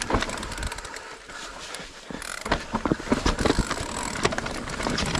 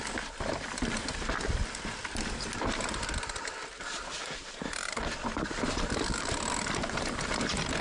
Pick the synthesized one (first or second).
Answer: second